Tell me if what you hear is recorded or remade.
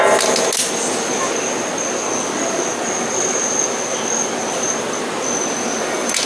recorded